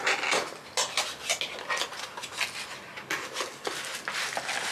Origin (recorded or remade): recorded